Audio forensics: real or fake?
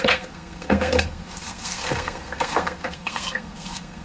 fake